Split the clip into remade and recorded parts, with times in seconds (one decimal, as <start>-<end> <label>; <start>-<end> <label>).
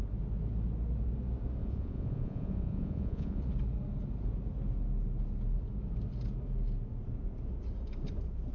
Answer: 0.0-1.6 recorded; 1.6-3.4 remade; 3.4-8.5 recorded